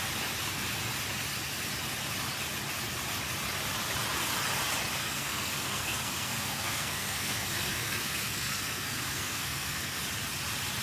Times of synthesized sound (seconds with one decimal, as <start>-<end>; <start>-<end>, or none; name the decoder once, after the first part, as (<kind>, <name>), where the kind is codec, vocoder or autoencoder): 5.0-10.0 (codec, SNAC)